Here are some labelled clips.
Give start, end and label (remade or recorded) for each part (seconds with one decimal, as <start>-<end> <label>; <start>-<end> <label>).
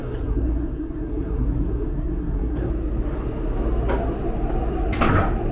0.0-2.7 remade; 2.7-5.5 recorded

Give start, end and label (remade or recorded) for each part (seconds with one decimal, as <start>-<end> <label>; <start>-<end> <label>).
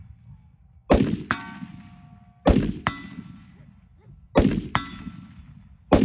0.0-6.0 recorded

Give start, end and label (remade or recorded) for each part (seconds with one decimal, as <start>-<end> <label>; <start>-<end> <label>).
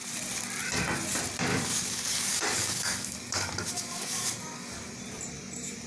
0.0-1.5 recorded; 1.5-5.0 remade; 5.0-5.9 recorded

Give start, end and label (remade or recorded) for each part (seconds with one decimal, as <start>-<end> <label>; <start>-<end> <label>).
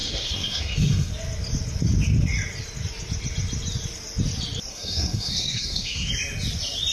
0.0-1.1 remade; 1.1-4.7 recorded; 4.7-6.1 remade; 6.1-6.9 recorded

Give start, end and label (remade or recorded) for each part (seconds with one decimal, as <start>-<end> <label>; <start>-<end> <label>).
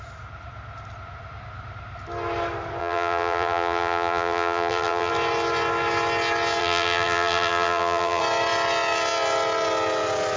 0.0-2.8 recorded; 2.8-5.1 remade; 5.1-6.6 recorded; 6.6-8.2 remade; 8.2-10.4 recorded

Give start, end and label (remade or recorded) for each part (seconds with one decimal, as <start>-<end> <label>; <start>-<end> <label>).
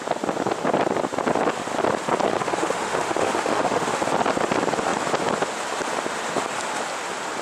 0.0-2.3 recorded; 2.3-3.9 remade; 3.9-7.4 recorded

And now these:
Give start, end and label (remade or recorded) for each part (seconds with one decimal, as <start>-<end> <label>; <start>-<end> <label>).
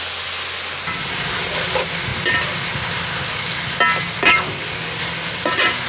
0.0-5.9 recorded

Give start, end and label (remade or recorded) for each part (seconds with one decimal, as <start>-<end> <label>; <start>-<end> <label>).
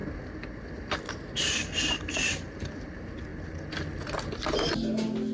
0.0-5.3 recorded